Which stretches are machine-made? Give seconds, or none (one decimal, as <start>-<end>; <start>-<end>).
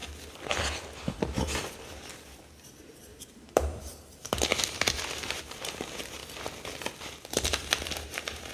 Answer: 3.2-6.2; 7.0-8.5